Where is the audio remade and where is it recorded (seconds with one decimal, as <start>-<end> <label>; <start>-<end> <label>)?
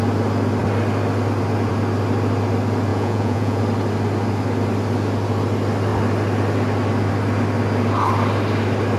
0.0-2.9 recorded; 2.9-3.6 remade; 3.6-9.0 recorded